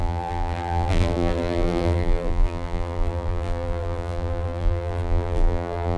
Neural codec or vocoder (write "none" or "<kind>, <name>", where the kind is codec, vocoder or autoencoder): vocoder, BigVGAN v2